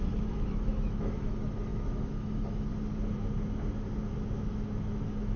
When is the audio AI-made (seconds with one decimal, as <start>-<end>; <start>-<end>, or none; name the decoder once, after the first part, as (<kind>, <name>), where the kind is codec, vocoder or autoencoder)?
0.0-2.7 (autoencoder, DAC-VAE); 4.5-5.4